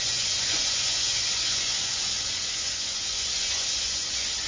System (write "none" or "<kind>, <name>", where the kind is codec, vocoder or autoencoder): vocoder, Vocos